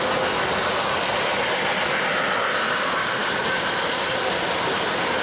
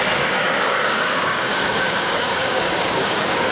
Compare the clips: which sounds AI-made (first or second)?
second